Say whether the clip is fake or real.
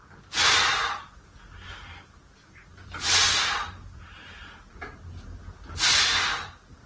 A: real